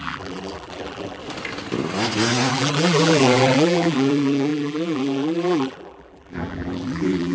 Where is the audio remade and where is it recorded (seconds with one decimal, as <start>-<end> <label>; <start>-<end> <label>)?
0.0-1.2 remade; 1.2-2.5 recorded; 2.5-7.3 remade